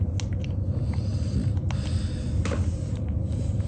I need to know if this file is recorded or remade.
recorded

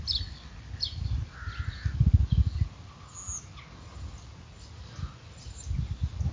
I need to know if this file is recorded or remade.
recorded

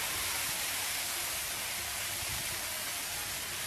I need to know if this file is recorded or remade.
recorded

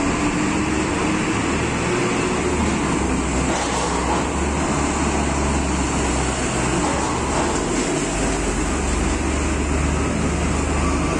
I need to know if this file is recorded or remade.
recorded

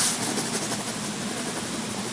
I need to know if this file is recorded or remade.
recorded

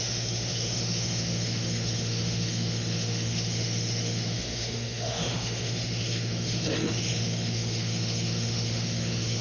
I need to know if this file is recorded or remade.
remade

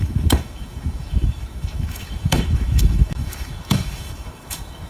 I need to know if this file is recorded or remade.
remade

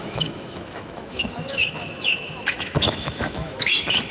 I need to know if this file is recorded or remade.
remade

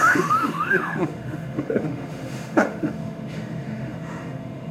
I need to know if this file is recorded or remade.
remade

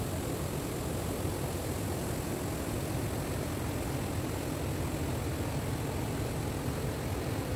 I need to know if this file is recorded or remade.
recorded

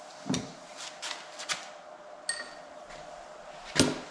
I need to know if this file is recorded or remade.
recorded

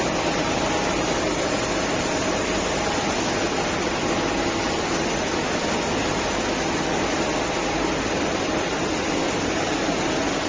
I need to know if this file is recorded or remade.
recorded